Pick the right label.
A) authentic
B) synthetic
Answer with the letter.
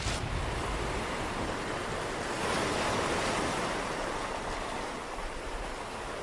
A